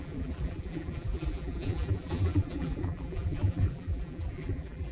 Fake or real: fake